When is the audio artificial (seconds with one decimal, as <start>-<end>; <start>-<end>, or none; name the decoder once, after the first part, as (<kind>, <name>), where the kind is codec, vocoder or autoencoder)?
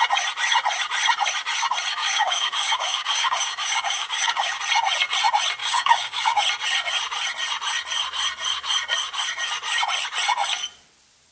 2.0-4.6 (codec, DAC); 5.6-6.4